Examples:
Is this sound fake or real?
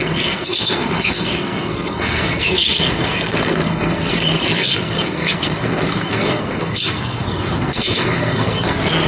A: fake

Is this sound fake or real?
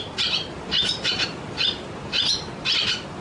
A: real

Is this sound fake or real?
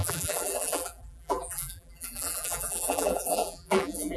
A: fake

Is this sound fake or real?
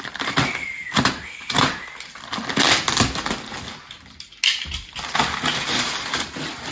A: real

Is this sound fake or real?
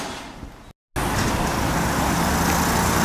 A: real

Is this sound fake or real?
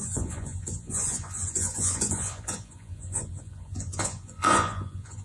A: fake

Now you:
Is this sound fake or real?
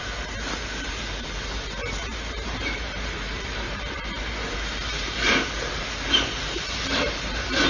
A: fake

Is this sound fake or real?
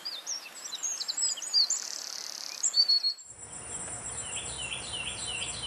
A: fake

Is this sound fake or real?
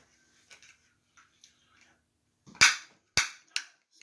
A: real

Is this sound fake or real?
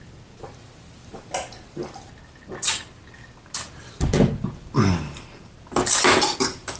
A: real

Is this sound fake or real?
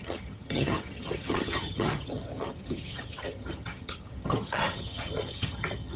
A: fake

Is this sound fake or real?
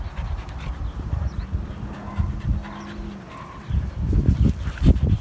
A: real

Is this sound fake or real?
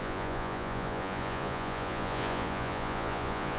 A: fake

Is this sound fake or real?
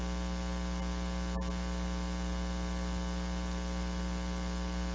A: real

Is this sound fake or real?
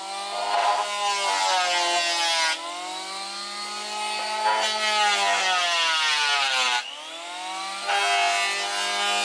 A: real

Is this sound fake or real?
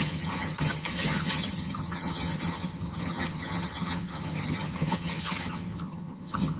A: fake